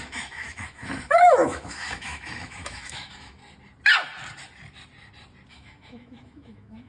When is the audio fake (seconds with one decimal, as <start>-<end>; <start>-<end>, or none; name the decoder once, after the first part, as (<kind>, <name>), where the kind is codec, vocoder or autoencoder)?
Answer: 0.0-3.4 (autoencoder, DAC-VAE); 5.5-6.9